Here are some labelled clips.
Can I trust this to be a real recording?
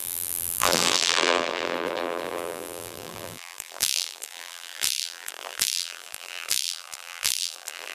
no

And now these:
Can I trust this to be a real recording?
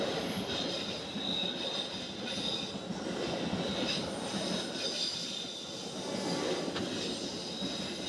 yes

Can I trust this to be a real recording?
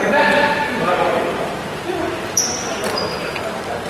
no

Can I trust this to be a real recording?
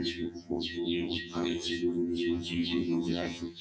no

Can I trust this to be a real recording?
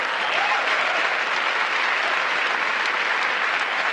yes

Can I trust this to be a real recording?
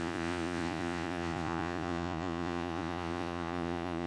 no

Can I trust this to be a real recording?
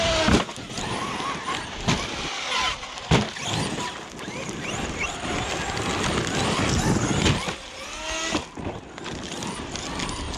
yes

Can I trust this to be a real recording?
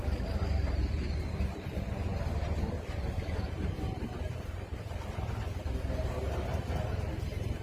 yes